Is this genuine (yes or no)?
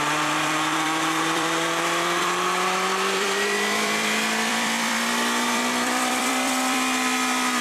no